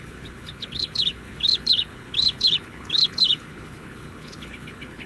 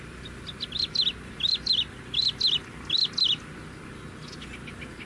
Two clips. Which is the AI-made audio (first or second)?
first